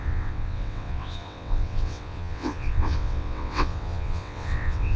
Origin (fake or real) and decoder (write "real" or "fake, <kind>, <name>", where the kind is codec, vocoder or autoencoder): fake, vocoder, WaveNeXt